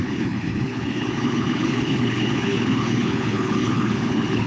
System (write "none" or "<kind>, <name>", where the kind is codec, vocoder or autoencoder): codec, HILCodec